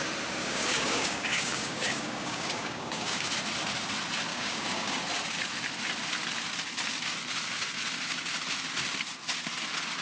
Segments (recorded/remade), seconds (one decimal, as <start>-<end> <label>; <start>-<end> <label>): 0.0-0.4 recorded; 0.4-3.3 remade; 3.3-4.3 recorded; 4.3-5.0 remade; 5.0-10.0 recorded